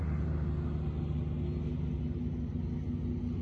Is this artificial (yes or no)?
no